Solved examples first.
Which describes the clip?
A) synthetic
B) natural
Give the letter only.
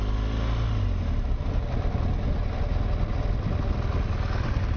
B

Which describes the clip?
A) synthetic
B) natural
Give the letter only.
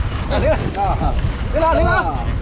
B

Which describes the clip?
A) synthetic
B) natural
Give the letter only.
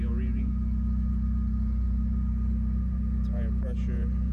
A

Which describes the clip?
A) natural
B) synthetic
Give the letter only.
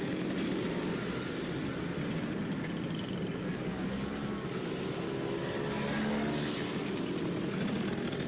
A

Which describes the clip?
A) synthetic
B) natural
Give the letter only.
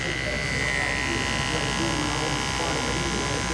B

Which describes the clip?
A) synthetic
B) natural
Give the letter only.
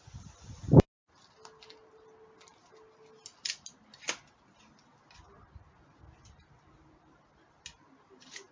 B